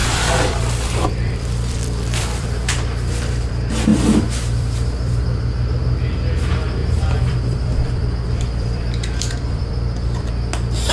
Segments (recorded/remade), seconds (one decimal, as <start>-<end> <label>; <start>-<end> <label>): 0.0-3.5 remade; 3.5-3.9 recorded; 3.9-5.2 remade; 5.2-6.8 recorded; 6.8-10.3 remade; 10.3-10.9 recorded